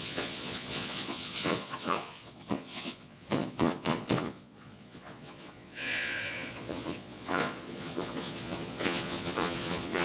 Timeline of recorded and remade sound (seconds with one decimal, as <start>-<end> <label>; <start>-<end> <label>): 0.0-10.0 remade